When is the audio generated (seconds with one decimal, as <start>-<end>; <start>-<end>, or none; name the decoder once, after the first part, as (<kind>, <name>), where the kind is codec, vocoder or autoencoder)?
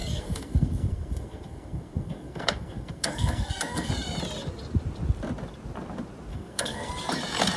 0.0-3.9 (codec, SNAC); 6.3-6.9